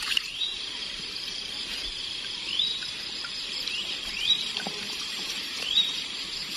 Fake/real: fake